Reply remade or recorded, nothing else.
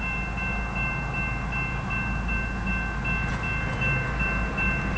recorded